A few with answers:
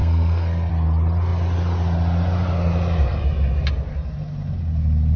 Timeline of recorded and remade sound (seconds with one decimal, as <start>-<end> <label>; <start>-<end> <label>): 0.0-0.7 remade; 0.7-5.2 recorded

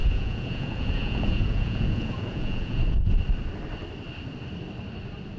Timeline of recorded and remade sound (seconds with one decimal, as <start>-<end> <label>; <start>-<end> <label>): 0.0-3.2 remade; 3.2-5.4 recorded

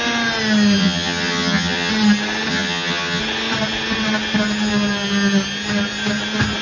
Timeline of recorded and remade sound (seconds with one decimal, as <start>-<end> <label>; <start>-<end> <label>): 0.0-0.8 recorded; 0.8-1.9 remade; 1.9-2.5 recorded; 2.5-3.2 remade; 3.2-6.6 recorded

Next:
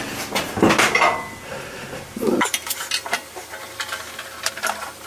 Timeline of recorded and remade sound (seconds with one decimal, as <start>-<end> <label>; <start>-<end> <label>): 0.0-5.1 recorded

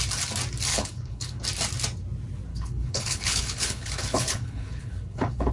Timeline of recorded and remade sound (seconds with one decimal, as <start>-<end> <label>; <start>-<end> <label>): 0.0-0.7 recorded; 0.7-1.4 remade; 1.4-2.5 recorded; 2.5-5.5 remade

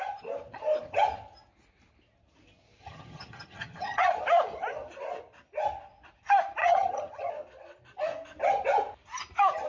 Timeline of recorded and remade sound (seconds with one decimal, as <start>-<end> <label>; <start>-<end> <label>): 0.0-2.8 recorded; 2.8-4.1 remade; 4.1-6.6 recorded; 6.6-7.3 remade; 7.3-9.7 recorded